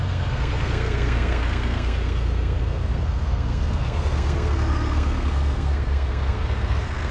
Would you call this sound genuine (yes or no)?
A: no